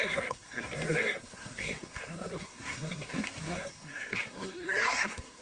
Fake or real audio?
fake